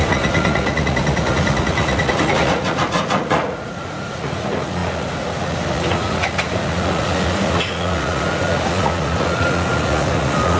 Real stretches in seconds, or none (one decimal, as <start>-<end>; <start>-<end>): none